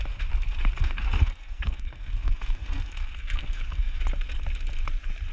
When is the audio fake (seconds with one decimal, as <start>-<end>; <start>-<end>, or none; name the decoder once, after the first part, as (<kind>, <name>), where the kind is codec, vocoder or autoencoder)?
0.8-4.0 (codec, SNAC)